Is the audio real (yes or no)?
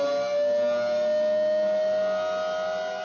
yes